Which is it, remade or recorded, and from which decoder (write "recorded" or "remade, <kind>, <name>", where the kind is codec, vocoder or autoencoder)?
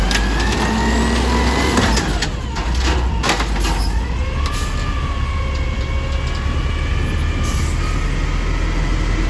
recorded